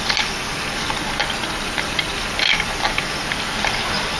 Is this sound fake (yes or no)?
no